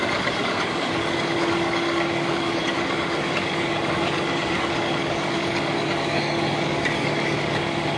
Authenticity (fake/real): fake